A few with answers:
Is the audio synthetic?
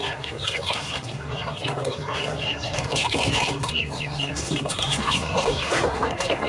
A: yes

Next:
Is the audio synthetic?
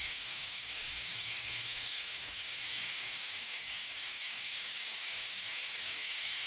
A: yes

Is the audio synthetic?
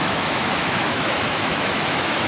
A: yes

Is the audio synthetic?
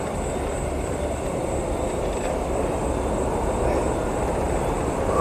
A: no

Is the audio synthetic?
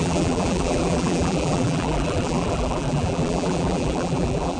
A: yes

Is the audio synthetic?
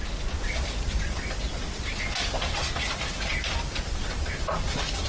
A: no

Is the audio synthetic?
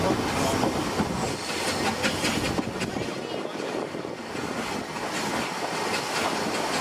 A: no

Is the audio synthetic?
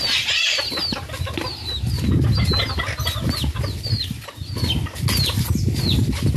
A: no